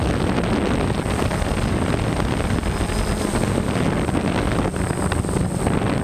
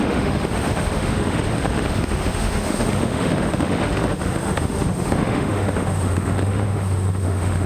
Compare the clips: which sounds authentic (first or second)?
first